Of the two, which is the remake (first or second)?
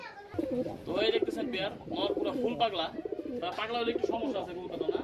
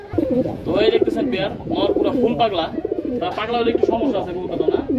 second